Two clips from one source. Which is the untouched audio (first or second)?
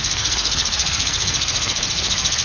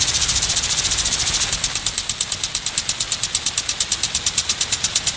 second